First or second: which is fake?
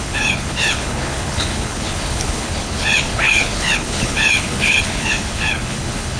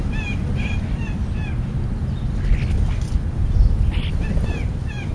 first